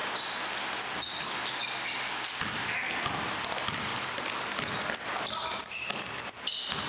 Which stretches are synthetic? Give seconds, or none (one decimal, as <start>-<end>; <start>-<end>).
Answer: none